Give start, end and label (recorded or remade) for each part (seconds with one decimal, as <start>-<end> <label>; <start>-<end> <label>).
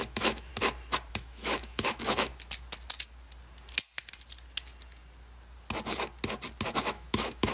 0.0-0.5 remade; 0.5-1.1 recorded; 1.1-2.3 remade; 2.3-6.8 recorded; 6.8-7.5 remade